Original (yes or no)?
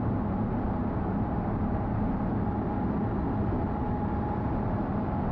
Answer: yes